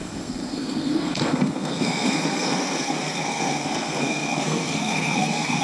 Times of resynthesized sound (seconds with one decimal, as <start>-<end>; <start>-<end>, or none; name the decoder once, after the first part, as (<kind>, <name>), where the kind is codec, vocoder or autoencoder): 0.0-5.6 (codec, SNAC)